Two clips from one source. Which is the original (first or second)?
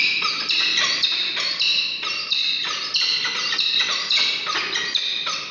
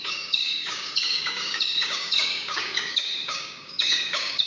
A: first